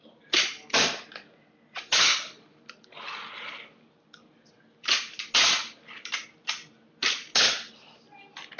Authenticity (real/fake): real